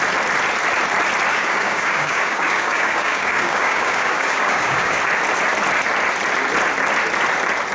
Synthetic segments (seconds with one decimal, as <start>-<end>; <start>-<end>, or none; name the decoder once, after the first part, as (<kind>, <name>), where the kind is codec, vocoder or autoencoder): 1.3-5.0 (codec, DAC)